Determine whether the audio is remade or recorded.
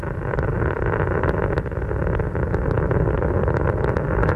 remade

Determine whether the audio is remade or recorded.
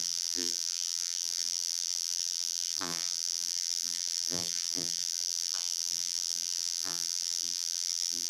remade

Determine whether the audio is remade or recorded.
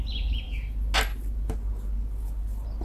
recorded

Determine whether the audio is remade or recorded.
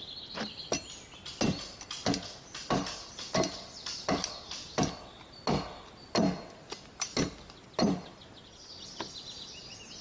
recorded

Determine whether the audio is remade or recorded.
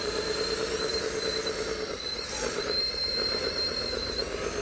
remade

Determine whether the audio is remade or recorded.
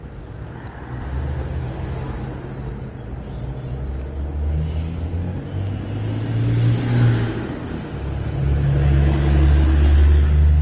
recorded